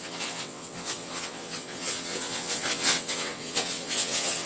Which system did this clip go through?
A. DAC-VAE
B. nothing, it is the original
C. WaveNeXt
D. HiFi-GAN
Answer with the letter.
C